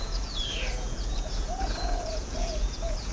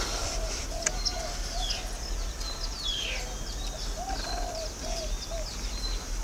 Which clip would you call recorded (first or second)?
second